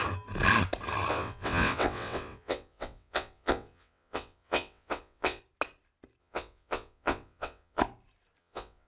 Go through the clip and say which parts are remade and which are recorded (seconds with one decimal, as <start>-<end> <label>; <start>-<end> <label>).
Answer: 0.0-1.1 recorded; 1.1-5.4 remade; 5.4-6.2 recorded; 6.2-7.8 remade; 7.8-8.4 recorded; 8.4-8.9 remade